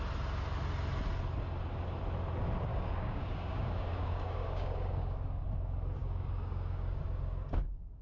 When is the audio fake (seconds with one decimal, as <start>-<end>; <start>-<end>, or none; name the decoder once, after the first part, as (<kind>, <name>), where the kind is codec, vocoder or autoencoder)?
2.7-5.4 (codec, DAC); 6.0-7.0